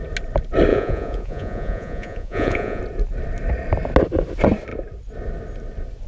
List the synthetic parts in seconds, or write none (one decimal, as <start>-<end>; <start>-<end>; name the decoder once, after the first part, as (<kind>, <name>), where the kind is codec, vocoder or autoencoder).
0.7-2.8 (vocoder, Vocos)